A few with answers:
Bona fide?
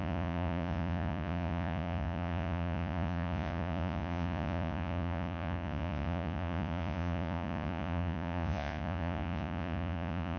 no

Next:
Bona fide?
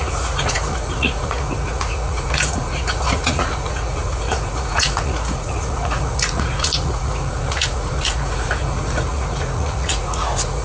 no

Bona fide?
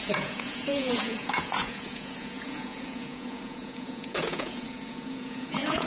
no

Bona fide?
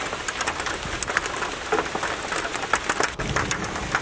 yes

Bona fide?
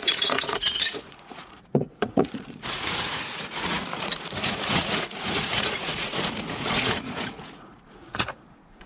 no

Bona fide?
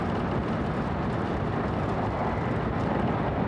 yes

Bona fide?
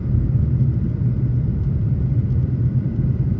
yes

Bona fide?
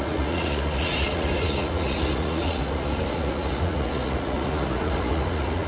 no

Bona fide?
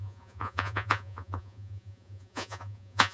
no